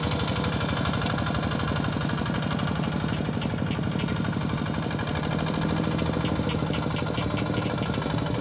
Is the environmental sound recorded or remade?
recorded